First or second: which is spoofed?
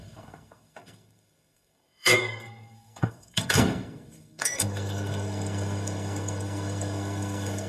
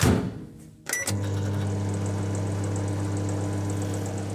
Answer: first